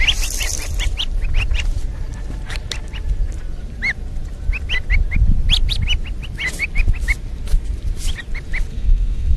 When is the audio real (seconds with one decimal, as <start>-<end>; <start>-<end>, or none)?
0.0-8.7

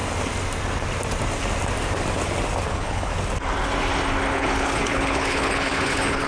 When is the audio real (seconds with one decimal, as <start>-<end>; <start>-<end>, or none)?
0.0-2.7; 3.1-4.3